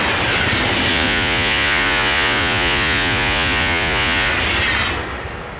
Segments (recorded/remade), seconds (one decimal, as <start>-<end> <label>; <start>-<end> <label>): 0.0-0.9 recorded; 0.9-4.3 remade; 4.3-5.6 recorded